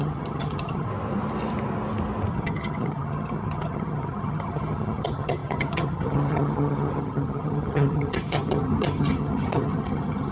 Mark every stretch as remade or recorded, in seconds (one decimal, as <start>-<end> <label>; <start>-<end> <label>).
0.0-0.9 remade; 0.9-2.3 recorded; 2.3-10.3 remade